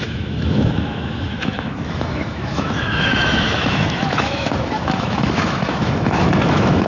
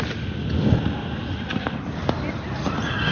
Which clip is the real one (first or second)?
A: second